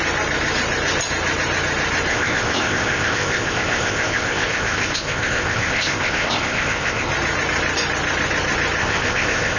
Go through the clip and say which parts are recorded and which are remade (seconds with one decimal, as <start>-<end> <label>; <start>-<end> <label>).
0.0-2.1 recorded; 2.1-7.1 remade; 7.1-8.8 recorded; 8.8-9.6 remade